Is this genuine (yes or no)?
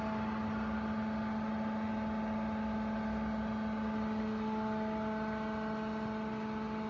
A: yes